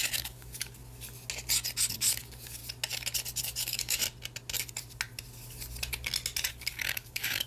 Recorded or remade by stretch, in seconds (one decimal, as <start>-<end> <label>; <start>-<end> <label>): 0.0-0.8 remade; 0.8-1.9 recorded; 1.9-2.6 remade; 2.6-3.4 recorded; 3.4-4.0 remade; 4.0-6.5 recorded; 6.5-7.5 remade